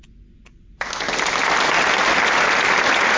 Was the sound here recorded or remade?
recorded